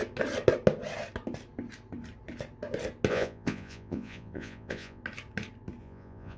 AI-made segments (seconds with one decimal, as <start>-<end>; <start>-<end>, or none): 3.1-5.0; 5.8-6.4